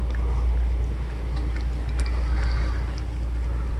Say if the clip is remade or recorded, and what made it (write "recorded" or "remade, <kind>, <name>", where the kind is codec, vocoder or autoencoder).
recorded